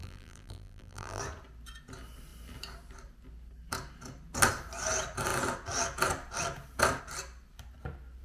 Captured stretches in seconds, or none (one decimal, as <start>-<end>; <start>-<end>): 1.2-8.2